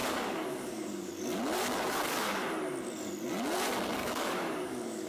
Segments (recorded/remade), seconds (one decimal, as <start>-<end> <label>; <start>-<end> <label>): 0.0-1.1 remade; 1.1-4.0 recorded; 4.0-5.1 remade